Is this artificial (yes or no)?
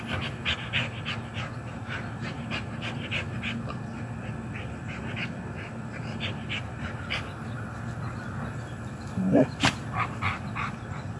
no